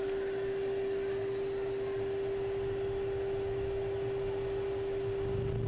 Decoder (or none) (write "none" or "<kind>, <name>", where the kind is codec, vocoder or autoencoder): none